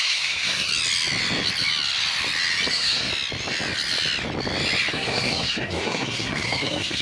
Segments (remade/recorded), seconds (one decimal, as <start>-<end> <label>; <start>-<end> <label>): 0.0-0.7 remade; 0.7-2.7 recorded; 2.7-3.1 remade; 3.1-4.9 recorded; 4.9-7.0 remade